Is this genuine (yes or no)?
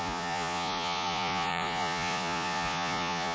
no